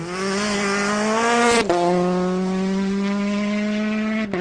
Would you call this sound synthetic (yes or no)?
no